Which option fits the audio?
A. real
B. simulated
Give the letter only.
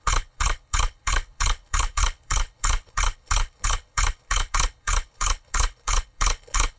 B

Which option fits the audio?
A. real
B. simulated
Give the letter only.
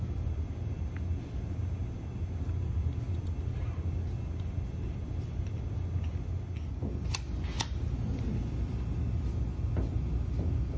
A